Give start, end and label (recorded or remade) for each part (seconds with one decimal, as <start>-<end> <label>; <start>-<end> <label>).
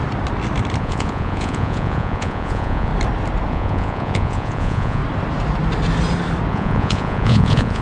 0.0-0.8 recorded; 0.8-2.9 remade; 2.9-3.5 recorded; 3.5-5.0 remade; 5.0-6.5 recorded; 6.5-7.8 remade